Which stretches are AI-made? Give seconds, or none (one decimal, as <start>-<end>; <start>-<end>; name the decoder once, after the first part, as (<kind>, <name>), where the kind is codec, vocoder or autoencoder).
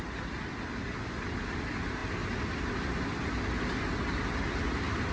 none